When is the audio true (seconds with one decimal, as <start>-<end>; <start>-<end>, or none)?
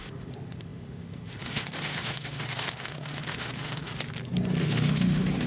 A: 3.9-4.6